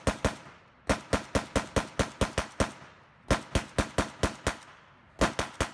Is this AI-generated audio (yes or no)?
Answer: no